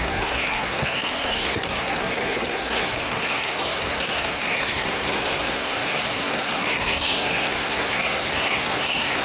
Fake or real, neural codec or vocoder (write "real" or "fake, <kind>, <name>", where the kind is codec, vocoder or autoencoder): fake, codec, SNAC